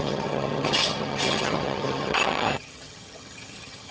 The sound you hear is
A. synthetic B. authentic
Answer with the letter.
A